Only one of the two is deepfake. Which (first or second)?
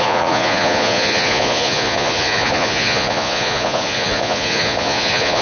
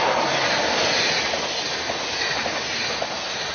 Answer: first